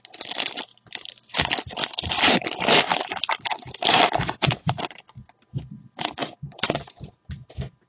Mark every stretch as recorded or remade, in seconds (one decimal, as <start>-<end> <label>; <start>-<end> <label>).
0.0-1.8 recorded; 1.8-4.8 remade; 4.8-6.2 recorded; 6.2-7.2 remade; 7.2-7.9 recorded